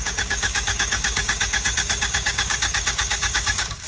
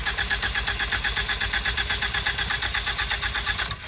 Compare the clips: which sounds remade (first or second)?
first